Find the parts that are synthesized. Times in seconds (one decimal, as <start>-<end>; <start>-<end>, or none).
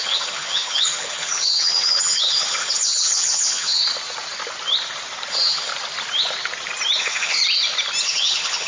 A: 0.0-3.8; 5.3-5.7; 7.0-7.4; 8.0-8.7